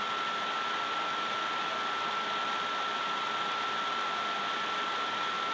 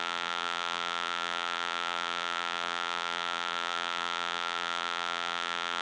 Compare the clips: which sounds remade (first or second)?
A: second